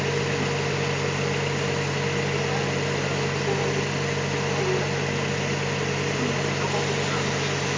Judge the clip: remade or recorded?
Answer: recorded